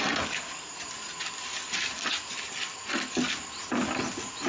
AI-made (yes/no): no